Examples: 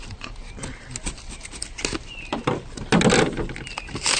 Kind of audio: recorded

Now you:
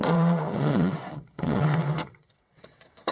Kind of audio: remade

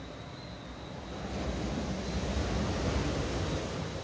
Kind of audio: recorded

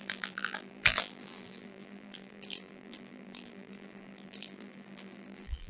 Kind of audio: remade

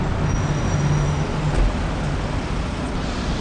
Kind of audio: recorded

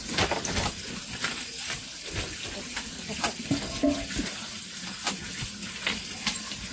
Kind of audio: recorded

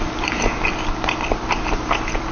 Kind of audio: recorded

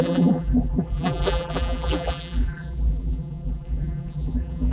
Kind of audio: remade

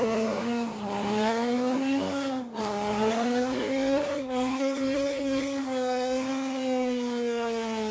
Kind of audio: remade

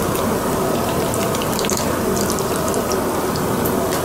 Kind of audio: recorded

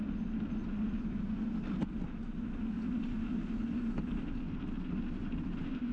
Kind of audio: recorded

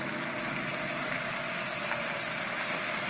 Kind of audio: recorded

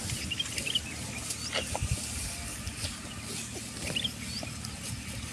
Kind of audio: recorded